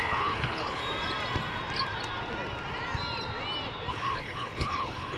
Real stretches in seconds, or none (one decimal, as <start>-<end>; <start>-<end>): 0.8-3.9